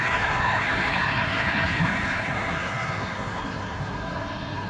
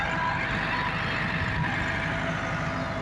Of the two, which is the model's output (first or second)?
first